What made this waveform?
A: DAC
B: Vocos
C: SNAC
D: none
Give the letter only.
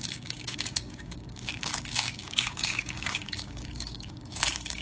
A